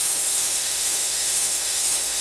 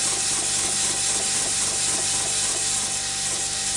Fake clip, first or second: first